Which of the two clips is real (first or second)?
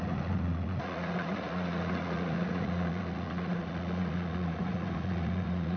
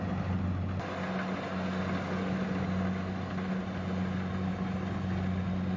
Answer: second